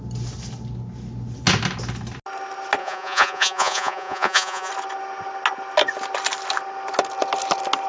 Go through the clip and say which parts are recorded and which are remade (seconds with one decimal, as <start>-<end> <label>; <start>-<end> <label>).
0.0-2.8 recorded; 2.8-4.7 remade; 4.7-7.9 recorded